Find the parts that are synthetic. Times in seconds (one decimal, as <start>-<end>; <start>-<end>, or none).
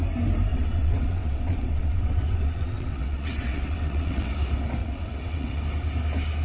0.5-4.3; 4.8-5.6